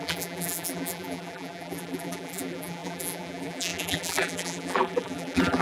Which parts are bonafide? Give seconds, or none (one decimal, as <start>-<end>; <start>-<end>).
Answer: none

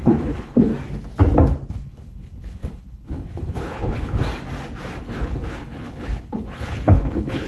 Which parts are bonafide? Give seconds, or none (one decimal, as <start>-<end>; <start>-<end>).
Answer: 0.7-1.7; 4.2-5.0

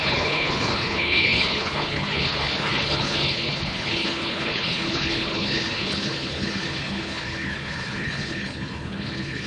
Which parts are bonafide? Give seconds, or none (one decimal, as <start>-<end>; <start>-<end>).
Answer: none

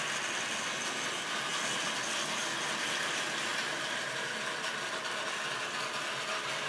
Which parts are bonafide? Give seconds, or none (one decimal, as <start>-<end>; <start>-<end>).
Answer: 0.0-6.7

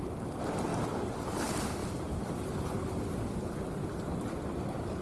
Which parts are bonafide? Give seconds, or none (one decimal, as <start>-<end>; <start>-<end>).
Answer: 0.0-0.7; 1.4-1.8; 2.5-3.8